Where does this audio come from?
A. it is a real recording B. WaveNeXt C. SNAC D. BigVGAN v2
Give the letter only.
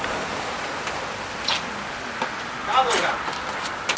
A